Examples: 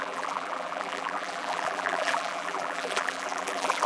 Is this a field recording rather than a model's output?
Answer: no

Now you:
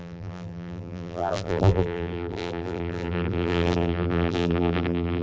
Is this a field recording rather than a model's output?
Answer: no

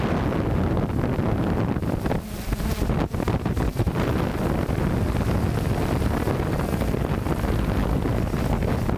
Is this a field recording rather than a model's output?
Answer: yes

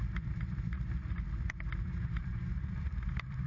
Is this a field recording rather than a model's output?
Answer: no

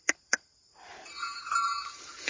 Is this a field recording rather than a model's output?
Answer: no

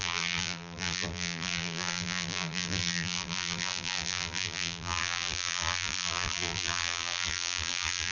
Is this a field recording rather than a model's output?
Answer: no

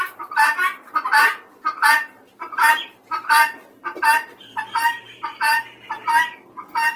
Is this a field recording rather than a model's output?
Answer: yes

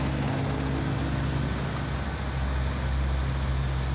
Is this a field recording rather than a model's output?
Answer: yes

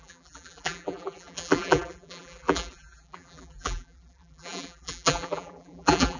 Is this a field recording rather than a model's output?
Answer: no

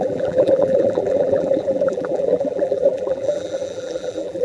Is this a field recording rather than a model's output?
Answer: no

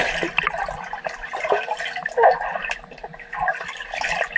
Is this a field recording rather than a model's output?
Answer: yes